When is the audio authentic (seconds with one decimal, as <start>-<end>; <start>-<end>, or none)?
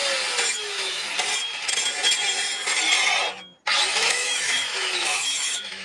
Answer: 0.0-0.6; 1.1-4.0